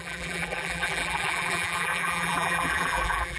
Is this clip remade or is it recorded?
remade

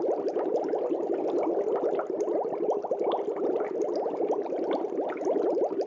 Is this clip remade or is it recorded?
recorded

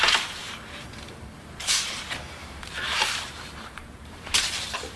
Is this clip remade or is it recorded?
remade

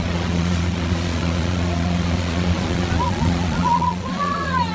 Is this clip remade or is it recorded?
remade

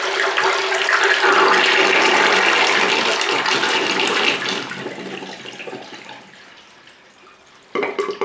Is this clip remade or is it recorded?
recorded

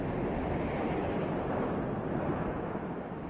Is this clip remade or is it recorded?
recorded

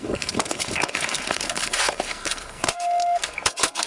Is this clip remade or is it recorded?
remade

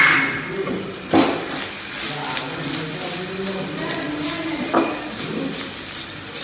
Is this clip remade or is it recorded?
recorded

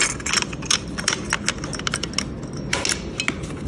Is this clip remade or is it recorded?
recorded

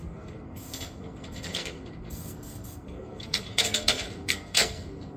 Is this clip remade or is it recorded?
remade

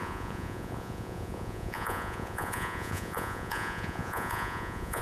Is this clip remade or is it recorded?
remade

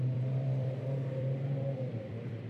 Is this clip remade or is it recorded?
remade